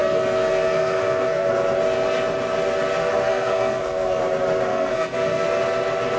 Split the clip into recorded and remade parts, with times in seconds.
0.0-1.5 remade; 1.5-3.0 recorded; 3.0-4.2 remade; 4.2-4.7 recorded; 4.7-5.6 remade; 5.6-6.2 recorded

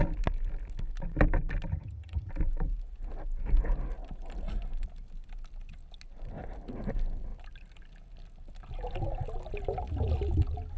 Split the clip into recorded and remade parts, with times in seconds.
0.0-1.7 recorded; 1.7-2.3 remade; 2.3-10.8 recorded

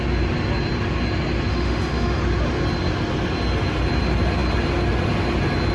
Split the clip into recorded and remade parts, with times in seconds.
0.0-1.5 recorded; 1.5-2.2 remade; 2.2-5.7 recorded